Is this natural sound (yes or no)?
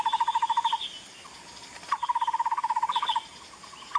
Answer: yes